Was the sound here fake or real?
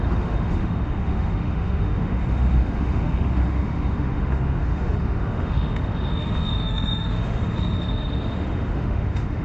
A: fake